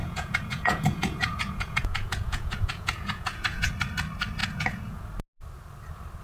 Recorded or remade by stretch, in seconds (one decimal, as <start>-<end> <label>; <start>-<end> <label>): 0.0-3.7 remade; 3.7-4.4 recorded; 4.4-5.0 remade; 5.0-6.2 recorded